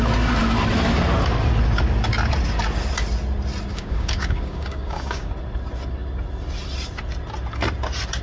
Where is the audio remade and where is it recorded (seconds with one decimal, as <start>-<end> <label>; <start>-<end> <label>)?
0.0-3.7 recorded; 3.7-5.3 remade; 5.3-8.2 recorded